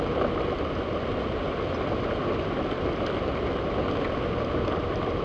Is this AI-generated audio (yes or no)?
no